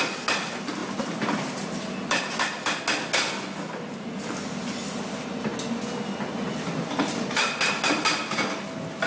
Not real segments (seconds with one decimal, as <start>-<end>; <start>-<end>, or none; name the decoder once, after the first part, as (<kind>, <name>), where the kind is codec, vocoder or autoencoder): none